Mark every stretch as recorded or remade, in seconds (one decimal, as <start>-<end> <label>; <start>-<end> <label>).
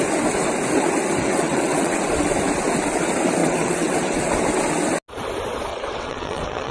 0.0-1.2 recorded; 1.2-2.0 remade; 2.0-3.4 recorded; 3.4-4.2 remade; 4.2-5.7 recorded; 5.7-6.7 remade